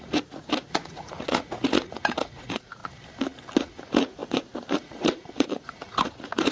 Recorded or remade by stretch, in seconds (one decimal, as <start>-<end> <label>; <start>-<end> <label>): 0.0-2.8 remade; 2.8-3.6 recorded; 3.6-6.5 remade